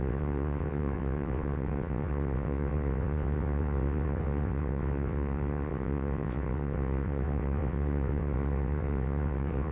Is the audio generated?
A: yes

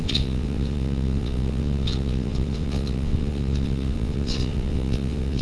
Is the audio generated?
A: yes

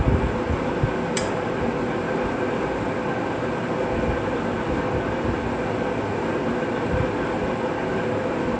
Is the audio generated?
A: no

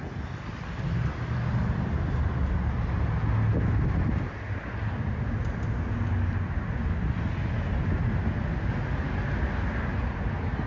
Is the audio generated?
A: no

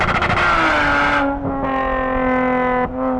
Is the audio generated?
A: no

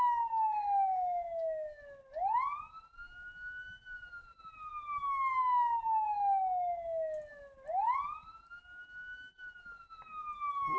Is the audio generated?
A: no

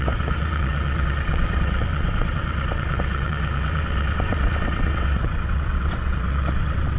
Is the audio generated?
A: yes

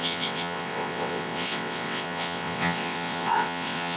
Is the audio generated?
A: yes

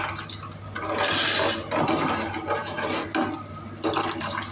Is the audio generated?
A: no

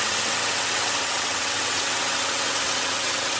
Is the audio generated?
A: yes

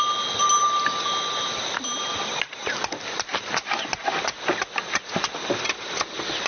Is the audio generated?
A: no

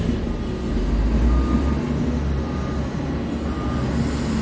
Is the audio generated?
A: no